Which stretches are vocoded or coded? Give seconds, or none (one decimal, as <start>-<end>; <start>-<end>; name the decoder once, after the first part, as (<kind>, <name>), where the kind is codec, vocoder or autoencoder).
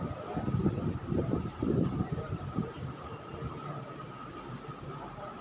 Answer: 1.0-3.3 (vocoder, BigVGAN v2)